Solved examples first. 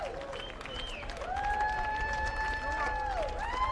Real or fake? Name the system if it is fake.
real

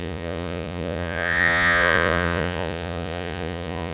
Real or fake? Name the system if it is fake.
fake, vocoder, Vocos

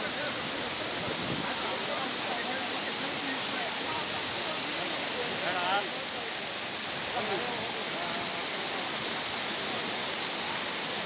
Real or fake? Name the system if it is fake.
real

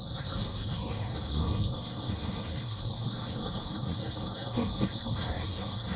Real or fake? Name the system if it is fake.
fake, codec, SNAC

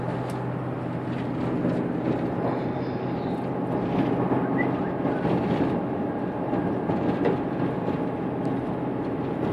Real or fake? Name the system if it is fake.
real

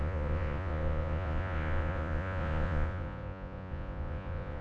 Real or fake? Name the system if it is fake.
fake, vocoder, Vocos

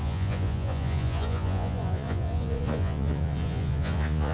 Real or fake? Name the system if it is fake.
fake, vocoder, Vocos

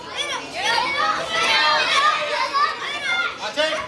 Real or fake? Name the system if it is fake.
real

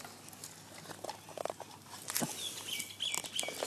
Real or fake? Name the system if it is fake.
real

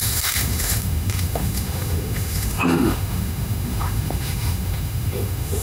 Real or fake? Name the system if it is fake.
fake, autoencoder, DAC-VAE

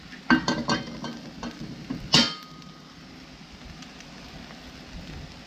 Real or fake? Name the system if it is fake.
real